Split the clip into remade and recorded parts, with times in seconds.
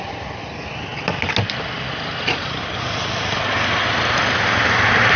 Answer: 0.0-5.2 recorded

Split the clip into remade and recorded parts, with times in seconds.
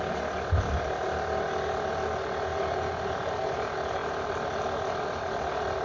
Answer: 0.0-5.8 recorded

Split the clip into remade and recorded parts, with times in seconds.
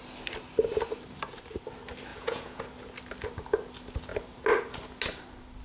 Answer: 0.0-2.1 recorded; 2.1-2.6 remade; 2.6-5.6 recorded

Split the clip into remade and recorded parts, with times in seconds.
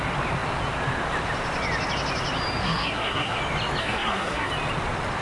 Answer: 0.0-2.6 recorded; 2.6-3.4 remade; 3.4-3.8 recorded; 3.8-4.5 remade; 4.5-5.2 recorded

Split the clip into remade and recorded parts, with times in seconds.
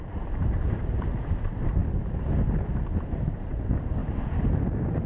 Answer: 0.0-1.8 remade; 1.8-2.9 recorded; 2.9-4.0 remade; 4.0-5.1 recorded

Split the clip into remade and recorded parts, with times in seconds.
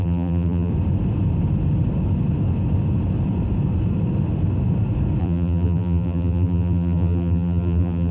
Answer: 0.0-0.7 remade; 0.7-5.2 recorded; 5.2-8.1 remade